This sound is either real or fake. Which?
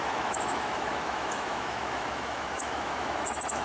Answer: fake